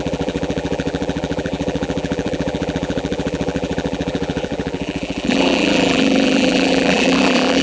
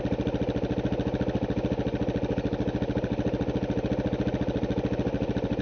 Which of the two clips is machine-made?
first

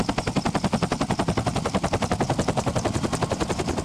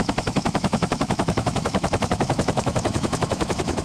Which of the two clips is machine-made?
second